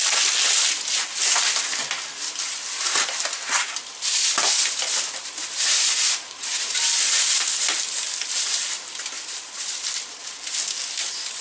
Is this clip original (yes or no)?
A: yes